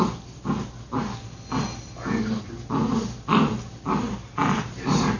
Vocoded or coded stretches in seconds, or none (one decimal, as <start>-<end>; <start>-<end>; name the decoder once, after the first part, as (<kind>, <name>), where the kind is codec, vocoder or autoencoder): none